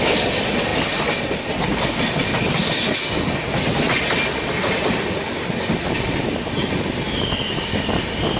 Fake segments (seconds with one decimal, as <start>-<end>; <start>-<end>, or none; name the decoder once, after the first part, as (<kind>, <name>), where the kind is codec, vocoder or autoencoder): none